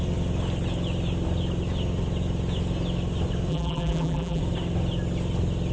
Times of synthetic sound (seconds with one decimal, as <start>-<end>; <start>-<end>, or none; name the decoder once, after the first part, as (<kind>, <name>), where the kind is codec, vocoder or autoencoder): 3.5-4.4 (vocoder, BigVGAN v2)

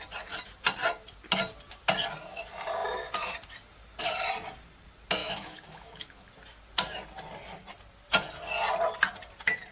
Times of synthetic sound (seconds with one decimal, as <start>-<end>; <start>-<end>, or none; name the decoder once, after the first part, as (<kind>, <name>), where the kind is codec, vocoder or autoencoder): 5.2-6.3 (autoencoder, DAC-VAE)

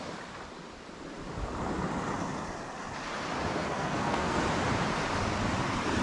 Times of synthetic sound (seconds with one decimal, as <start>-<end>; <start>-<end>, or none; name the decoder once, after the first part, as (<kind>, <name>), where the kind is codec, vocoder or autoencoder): 3.6-4.4 (codec, SNAC)

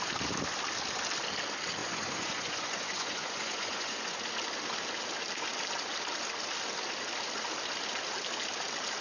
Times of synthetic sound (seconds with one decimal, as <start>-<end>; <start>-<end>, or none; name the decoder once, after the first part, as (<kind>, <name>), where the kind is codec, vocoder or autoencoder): 1.8-4.2 (vocoder, Vocos)

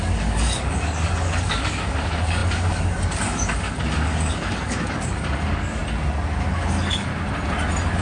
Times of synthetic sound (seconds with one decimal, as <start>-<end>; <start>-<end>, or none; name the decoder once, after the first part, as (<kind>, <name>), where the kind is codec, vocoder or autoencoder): 0.0-5.8 (codec, DAC); 6.5-7.1